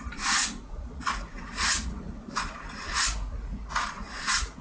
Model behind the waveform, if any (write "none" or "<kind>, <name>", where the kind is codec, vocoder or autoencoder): vocoder, Vocos